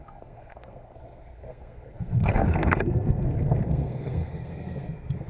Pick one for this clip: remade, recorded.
remade